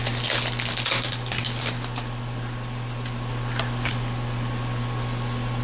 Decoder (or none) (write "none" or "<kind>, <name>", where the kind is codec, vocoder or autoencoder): none